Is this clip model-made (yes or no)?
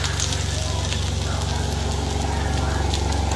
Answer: no